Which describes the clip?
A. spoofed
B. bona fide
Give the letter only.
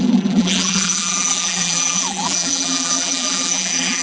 A